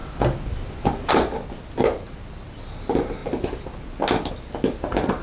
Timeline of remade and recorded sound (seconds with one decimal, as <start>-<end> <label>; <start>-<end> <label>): 0.0-5.2 recorded